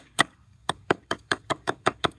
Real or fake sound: fake